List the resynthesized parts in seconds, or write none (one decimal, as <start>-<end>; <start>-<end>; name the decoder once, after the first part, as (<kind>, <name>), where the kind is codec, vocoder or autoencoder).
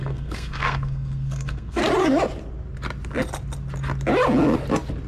0.0-1.8 (codec, SNAC)